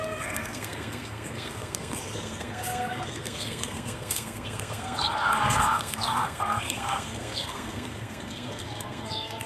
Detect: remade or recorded remade